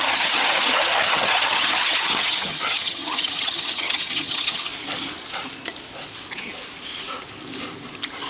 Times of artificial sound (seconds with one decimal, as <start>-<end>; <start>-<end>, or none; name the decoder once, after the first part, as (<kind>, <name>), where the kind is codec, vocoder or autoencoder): 0.0-4.7 (vocoder, HiFi-GAN)